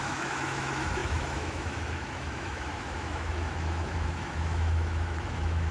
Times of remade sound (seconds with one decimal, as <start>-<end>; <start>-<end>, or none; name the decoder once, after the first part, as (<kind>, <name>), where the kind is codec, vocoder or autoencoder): 0.0-5.7 (autoencoder, DAC-VAE)